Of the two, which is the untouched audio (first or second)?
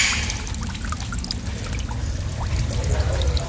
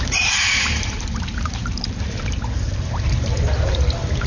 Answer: first